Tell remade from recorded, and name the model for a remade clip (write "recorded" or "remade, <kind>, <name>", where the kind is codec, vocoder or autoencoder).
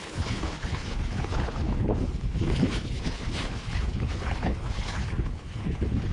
remade, codec, HILCodec